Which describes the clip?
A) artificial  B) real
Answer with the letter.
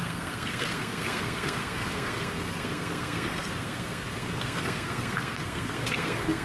A